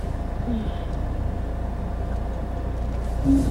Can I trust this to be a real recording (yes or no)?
yes